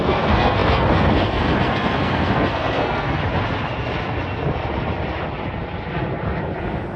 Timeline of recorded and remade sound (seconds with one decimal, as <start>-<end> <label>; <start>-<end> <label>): 0.0-3.2 remade; 3.2-7.0 recorded